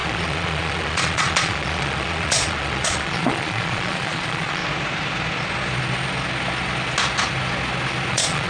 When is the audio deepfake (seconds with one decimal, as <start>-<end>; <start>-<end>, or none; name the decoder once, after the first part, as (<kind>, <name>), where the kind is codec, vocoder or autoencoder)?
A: 0.0-4.6 (vocoder, Vocos); 8.1-8.5